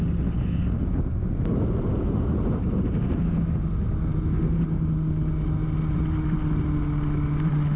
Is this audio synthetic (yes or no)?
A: no